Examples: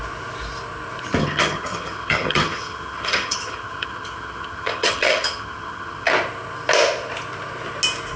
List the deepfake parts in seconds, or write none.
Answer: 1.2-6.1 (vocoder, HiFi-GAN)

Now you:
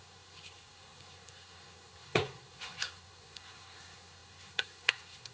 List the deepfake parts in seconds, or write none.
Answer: 0.0-5.3 (codec, SNAC)

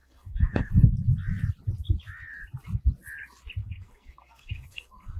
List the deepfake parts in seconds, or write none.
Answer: 0.0-0.7 (codec, SNAC); 3.6-5.2

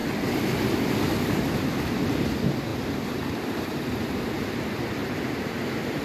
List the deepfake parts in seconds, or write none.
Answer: none

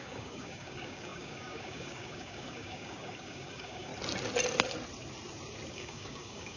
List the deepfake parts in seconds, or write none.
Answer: 0.0-3.9 (codec, DAC); 5.7-6.6

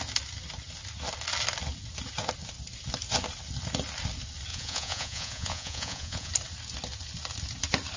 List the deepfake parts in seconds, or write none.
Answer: 4.5-6.3 (vocoder, Vocos)

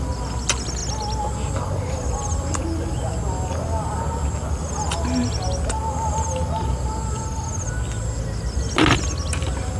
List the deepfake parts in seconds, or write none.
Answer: none